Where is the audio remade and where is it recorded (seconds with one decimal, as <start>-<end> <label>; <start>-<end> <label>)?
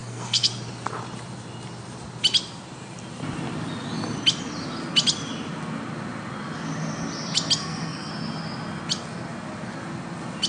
0.0-0.5 remade; 0.5-7.6 recorded; 7.6-8.1 remade; 8.1-10.5 recorded